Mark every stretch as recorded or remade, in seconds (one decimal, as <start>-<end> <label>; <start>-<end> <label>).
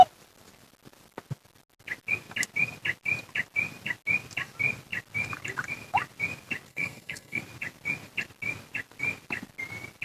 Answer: 0.0-6.7 recorded; 6.7-7.4 remade; 7.4-10.0 recorded